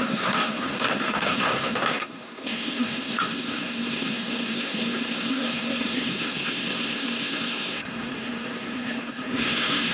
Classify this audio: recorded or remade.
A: remade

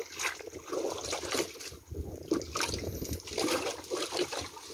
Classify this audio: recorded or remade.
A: recorded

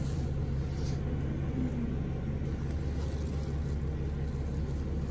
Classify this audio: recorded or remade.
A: recorded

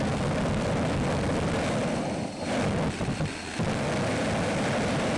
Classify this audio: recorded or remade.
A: recorded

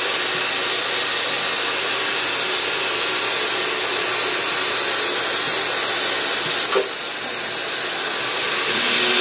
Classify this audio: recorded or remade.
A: recorded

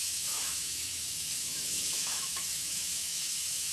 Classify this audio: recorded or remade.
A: remade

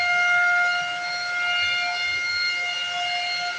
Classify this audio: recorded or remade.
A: recorded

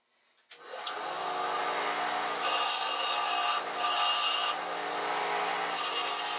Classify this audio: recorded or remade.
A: recorded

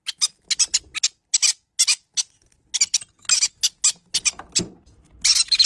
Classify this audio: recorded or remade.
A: recorded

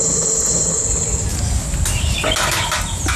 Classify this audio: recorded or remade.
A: recorded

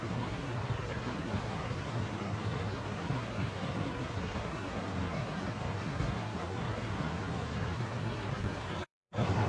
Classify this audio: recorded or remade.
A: remade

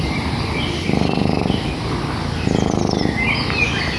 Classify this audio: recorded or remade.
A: recorded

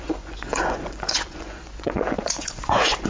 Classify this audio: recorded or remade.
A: remade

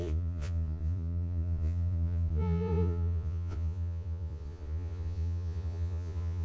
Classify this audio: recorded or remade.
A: remade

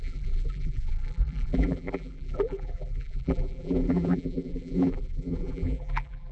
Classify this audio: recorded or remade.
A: remade